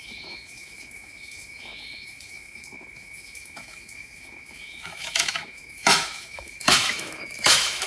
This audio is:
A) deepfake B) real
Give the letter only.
A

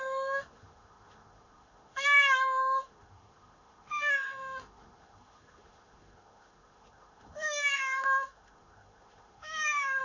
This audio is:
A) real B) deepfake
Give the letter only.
B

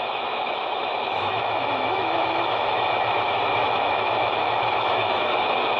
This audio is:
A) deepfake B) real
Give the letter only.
A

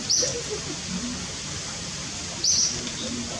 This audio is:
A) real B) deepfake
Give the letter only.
A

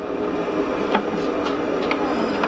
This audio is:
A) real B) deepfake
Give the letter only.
A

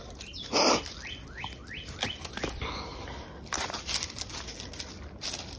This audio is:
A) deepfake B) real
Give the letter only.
B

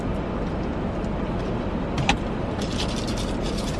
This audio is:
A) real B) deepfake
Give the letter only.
A